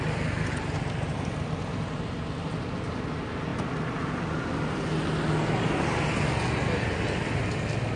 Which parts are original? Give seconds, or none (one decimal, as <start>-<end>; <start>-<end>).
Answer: 0.0-8.0